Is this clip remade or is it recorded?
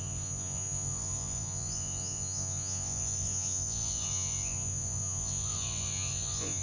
remade